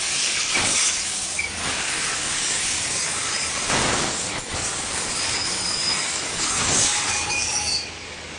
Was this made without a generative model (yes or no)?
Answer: no